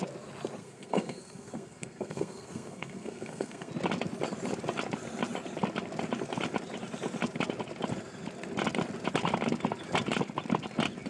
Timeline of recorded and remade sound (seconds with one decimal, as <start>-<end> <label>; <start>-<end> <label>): 0.0-0.6 recorded; 0.6-3.7 remade; 3.7-11.1 recorded